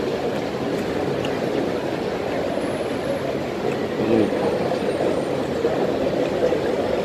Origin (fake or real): real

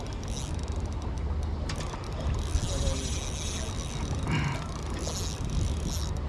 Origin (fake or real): real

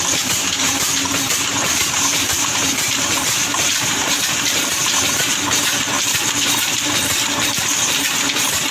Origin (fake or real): fake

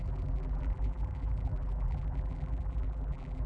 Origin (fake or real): fake